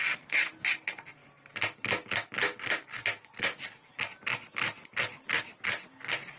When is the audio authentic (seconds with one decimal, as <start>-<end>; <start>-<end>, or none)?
0.0-6.4